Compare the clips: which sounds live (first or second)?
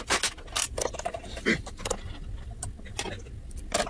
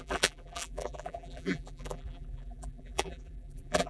first